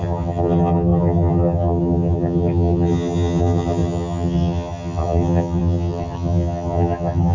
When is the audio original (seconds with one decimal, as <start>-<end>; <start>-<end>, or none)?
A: none